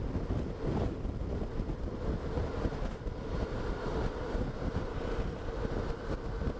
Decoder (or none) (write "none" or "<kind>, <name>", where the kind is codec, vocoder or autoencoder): none